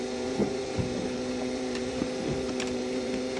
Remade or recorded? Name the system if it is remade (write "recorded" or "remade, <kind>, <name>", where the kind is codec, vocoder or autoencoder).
remade, vocoder, BigVGAN v2